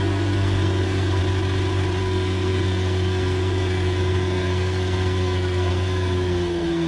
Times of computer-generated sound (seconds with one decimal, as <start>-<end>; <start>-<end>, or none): 0.0-1.2; 2.0-6.9